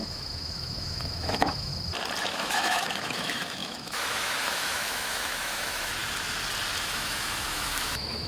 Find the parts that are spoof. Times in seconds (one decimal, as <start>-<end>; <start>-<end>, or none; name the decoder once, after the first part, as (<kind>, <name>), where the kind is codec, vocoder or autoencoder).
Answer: 0.0-1.7 (autoencoder, DAC-VAE); 2.2-6.0; 6.8-8.3